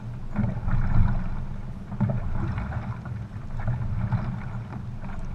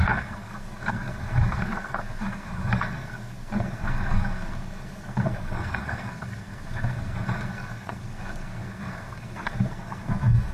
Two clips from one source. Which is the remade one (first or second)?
second